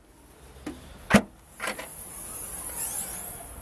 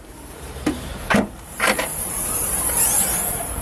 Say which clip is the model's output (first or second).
second